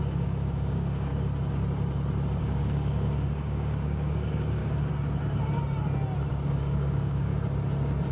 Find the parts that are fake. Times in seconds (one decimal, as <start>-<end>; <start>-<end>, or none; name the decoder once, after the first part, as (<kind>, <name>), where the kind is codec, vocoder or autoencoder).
0.0-1.1 (codec, DAC); 2.4-4.6; 6.3-7.3